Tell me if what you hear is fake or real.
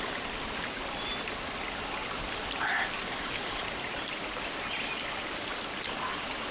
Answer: real